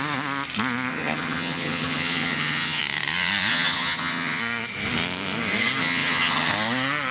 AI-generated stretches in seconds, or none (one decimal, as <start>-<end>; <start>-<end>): 0.9-2.8; 3.5-4.4; 5.8-6.5

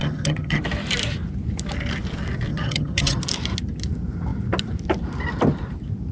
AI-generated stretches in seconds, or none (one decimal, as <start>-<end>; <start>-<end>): 0.0-0.6; 2.5-3.2

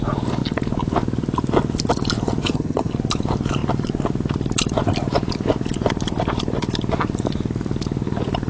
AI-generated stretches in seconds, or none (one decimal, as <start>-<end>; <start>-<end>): 2.4-2.9

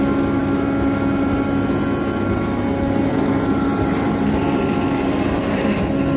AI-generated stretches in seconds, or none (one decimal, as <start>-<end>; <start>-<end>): none

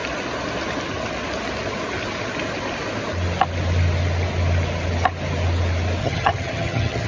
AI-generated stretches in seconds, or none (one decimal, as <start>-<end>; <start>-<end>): 6.0-7.1

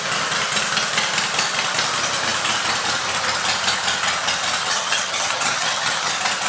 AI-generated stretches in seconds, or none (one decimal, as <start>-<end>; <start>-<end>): 4.6-6.1

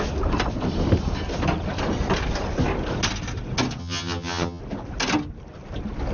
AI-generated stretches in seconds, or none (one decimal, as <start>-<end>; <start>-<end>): 3.8-4.6